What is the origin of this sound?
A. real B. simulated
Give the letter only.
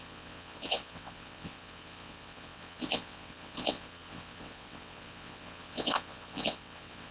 B